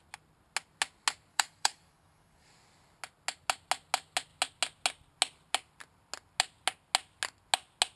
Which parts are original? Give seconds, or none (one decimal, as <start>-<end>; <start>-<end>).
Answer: 0.0-1.3; 2.5-8.0